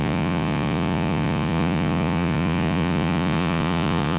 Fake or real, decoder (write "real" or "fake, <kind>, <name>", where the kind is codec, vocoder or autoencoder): fake, vocoder, Vocos